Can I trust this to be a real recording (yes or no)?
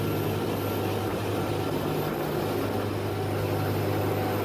yes